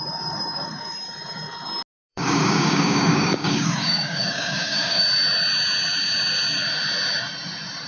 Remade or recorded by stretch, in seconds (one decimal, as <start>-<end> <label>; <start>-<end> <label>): 0.0-2.1 recorded; 2.1-5.0 remade; 5.0-7.9 recorded